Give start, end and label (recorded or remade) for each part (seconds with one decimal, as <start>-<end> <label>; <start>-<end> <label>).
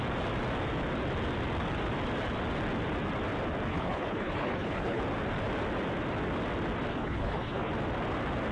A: 0.0-3.7 recorded; 3.7-5.0 remade; 5.0-6.9 recorded; 6.9-7.7 remade; 7.7-8.5 recorded